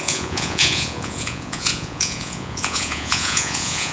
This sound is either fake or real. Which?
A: fake